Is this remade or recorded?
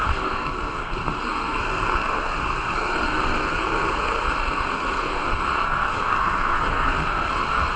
remade